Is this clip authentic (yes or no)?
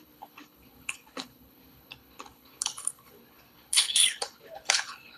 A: no